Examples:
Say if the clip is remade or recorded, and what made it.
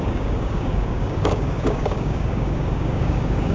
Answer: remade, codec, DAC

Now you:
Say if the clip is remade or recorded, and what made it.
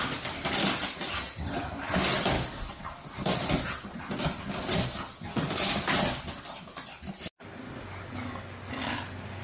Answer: recorded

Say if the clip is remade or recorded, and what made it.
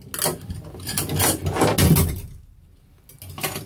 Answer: recorded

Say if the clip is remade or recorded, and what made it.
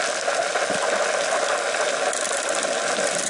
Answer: recorded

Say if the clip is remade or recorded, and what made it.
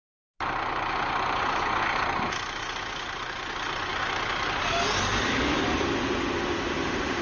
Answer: recorded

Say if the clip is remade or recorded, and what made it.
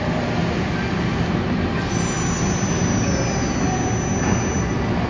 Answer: recorded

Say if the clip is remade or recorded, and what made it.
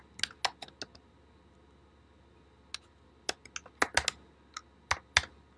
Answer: recorded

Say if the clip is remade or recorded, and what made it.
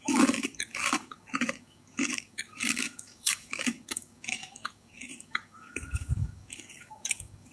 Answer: remade, codec, DAC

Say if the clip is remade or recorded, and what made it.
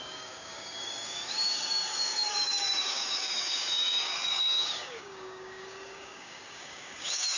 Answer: remade, codec, DAC